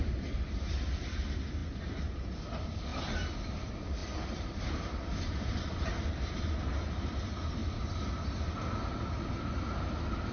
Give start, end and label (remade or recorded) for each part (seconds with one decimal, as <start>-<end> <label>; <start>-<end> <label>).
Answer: 0.0-4.0 recorded; 4.0-5.8 remade; 5.8-7.6 recorded; 7.6-8.3 remade; 8.3-10.3 recorded